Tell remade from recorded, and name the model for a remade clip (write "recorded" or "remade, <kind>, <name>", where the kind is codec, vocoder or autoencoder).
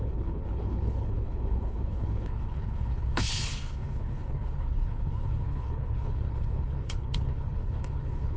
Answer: remade, codec, HILCodec